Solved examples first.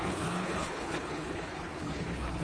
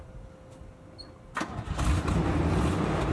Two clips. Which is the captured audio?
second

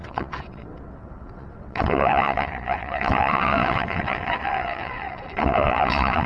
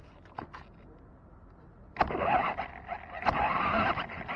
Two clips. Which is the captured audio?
second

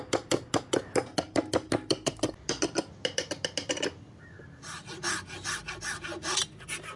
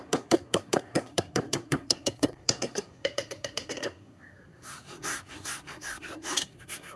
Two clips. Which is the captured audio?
first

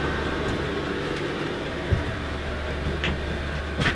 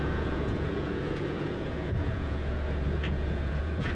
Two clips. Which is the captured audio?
first